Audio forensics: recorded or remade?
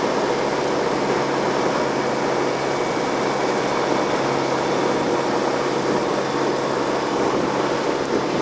recorded